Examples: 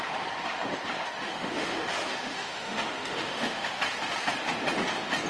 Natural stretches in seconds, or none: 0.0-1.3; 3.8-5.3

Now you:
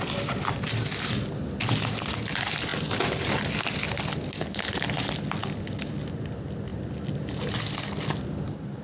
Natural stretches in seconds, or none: 0.0-8.8

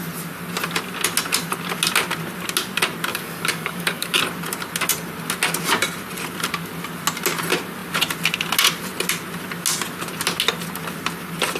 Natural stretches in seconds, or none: 0.0-3.1; 4.2-11.6